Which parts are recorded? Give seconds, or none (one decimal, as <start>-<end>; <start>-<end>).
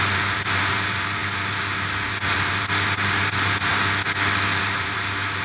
3.7-4.6